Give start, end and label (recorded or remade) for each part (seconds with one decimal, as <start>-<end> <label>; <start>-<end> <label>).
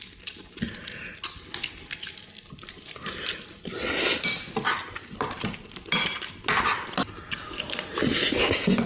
0.0-8.9 recorded